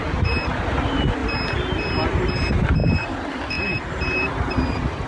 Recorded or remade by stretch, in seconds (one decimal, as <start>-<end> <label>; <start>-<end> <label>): 0.0-1.2 remade; 1.2-2.3 recorded; 2.3-5.1 remade